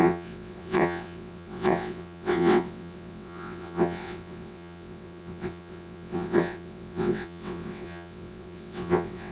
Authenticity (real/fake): fake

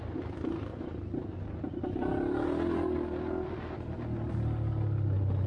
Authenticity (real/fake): real